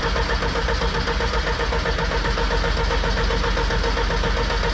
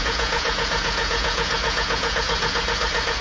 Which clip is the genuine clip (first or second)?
first